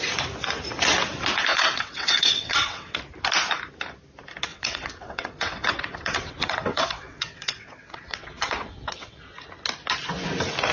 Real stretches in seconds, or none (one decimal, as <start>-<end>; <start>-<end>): 0.0-1.5; 3.0-4.5; 9.2-10.7